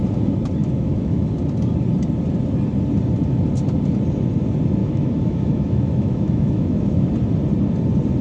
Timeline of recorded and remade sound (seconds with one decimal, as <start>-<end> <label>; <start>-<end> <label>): 0.0-0.6 recorded; 0.6-1.3 remade; 1.3-4.8 recorded; 4.8-7.1 remade; 7.1-8.2 recorded